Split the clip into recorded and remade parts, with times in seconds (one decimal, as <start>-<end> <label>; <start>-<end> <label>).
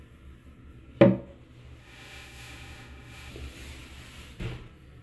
0.0-1.8 recorded; 1.8-3.3 remade; 3.3-5.0 recorded